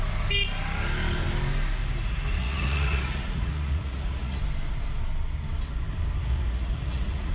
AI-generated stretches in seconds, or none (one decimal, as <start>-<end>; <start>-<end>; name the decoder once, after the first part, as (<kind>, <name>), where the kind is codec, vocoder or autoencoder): 2.4-4.4 (vocoder, Vocos); 6.2-7.3